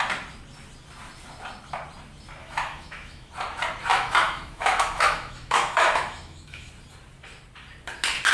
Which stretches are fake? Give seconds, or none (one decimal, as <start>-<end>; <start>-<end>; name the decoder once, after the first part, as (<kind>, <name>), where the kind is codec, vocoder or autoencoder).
2.4-3.3 (autoencoder, DAC-VAE); 3.9-6.7